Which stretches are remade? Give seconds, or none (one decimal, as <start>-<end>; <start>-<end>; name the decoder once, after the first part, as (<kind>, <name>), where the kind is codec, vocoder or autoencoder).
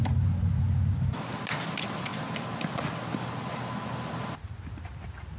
none